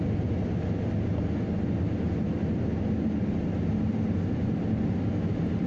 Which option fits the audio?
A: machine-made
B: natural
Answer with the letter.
B